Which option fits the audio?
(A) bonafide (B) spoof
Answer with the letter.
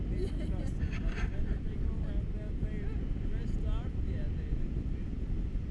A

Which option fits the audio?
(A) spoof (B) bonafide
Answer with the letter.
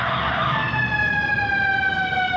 B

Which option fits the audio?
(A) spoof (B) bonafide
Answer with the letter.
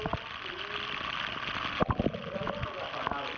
B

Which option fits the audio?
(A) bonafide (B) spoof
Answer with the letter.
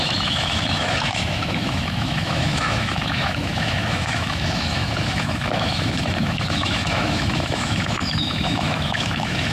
B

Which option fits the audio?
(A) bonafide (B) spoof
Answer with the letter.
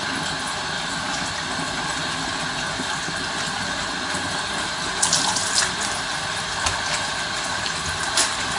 A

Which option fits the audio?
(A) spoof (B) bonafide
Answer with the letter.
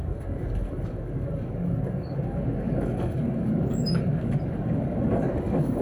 A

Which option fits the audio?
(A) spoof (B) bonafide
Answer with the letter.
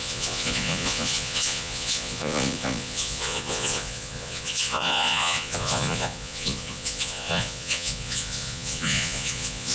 A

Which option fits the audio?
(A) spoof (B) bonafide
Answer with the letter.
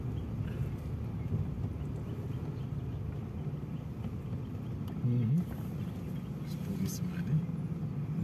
B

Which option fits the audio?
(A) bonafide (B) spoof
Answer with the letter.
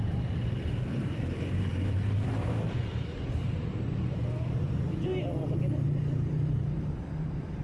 B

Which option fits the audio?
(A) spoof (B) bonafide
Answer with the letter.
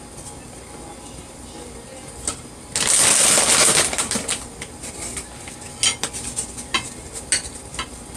B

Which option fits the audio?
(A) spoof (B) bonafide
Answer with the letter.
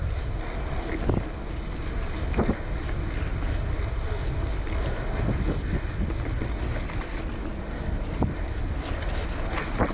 B